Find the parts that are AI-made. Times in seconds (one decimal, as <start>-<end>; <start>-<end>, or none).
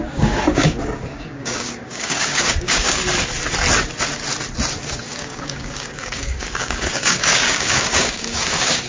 0.0-3.0; 4.7-8.9